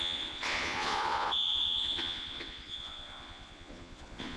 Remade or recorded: remade